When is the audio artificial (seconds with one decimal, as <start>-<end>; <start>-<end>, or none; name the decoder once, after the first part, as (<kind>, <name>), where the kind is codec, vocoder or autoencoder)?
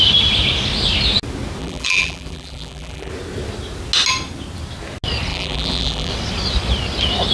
1.6-3.1 (vocoder, BigVGAN v2); 5.3-6.1